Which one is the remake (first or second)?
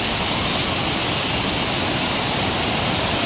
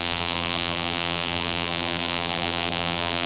second